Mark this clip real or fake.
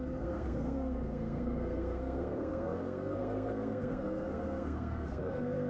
fake